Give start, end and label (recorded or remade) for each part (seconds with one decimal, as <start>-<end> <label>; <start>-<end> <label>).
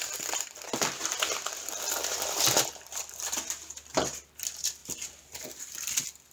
0.0-4.8 remade; 4.8-5.4 recorded; 5.4-6.3 remade